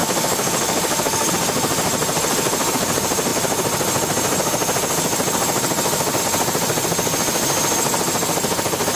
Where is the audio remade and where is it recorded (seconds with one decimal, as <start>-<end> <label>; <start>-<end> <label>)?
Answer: 0.0-1.3 remade; 1.3-9.0 recorded